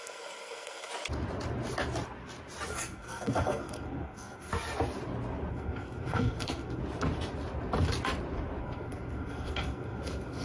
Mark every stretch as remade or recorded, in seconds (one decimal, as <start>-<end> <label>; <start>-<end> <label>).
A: 0.0-0.9 remade; 0.9-2.7 recorded; 2.7-4.5 remade; 4.5-5.5 recorded; 5.5-6.8 remade; 6.8-8.6 recorded; 8.6-10.4 remade